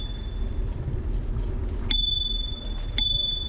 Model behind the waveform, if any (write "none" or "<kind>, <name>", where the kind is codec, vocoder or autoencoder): none